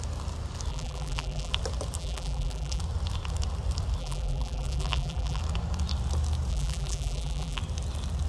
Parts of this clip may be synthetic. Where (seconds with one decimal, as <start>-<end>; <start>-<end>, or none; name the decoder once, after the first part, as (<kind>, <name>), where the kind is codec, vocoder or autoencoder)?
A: 0.7-1.5 (vocoder, BigVGAN v2); 2.0-2.8; 4.0-5.4; 6.5-7.6